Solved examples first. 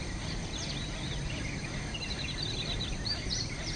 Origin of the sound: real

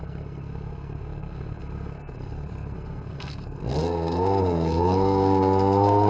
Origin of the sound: fake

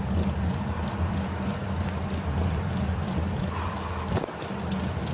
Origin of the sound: real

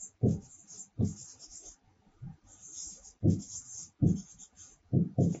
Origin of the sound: real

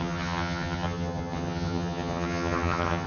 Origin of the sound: fake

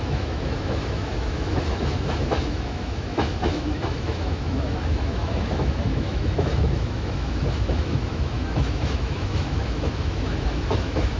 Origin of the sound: fake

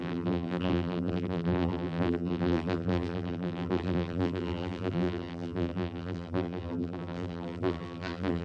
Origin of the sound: fake